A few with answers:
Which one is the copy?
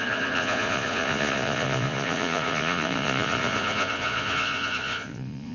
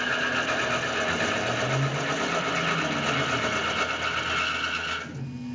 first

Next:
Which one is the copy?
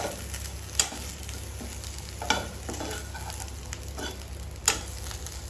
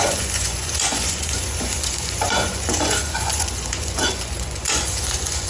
second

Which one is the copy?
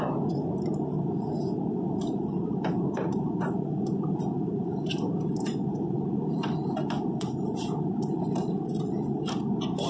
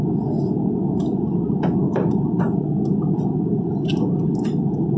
first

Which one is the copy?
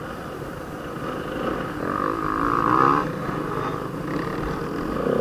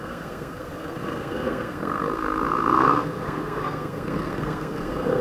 second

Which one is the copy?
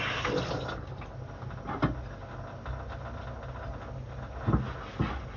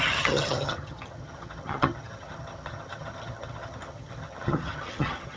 second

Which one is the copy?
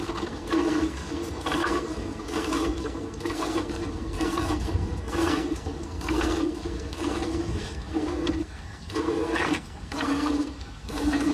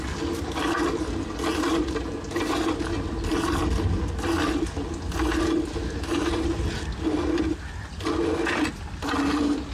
first